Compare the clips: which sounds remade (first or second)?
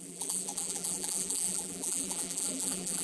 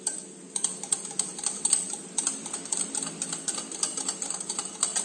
first